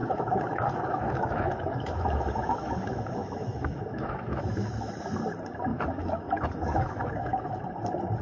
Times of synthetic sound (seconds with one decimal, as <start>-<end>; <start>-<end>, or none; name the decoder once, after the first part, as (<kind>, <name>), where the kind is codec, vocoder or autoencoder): 0.0-4.9 (autoencoder, DAC-VAE); 5.7-7.6